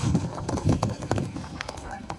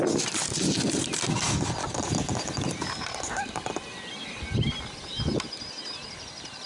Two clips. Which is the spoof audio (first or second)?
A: first